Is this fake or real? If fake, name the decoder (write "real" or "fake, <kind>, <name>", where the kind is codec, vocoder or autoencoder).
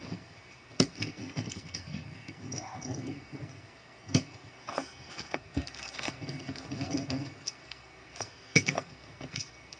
fake, codec, SNAC